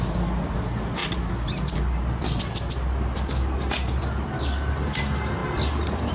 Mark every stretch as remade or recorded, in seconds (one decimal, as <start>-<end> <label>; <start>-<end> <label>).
0.0-6.1 recorded